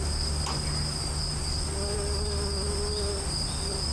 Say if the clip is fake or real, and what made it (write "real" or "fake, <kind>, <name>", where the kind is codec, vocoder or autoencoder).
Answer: real